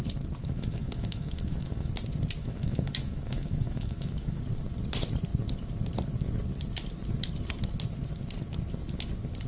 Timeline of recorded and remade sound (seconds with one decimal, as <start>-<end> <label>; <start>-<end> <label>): 0.0-0.4 recorded; 0.4-1.9 remade; 1.9-2.4 recorded; 2.4-4.4 remade; 4.4-9.5 recorded